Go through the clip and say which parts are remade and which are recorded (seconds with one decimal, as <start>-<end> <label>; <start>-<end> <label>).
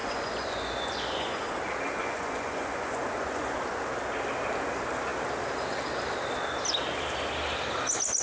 0.0-1.5 remade; 1.5-2.0 recorded; 2.0-3.6 remade; 3.6-8.2 recorded